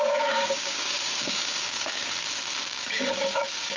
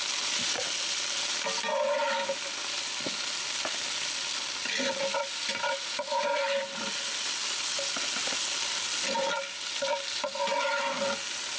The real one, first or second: second